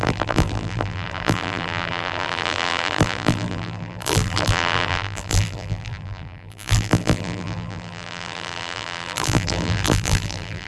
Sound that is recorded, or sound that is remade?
remade